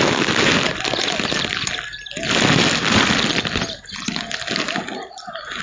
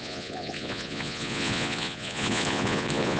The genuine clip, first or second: first